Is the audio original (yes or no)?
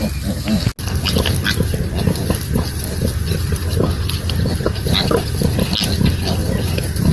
yes